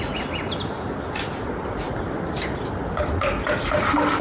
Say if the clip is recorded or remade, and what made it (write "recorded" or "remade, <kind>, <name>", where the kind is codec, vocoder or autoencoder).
recorded